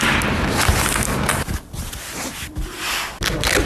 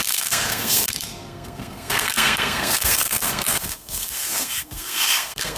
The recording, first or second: first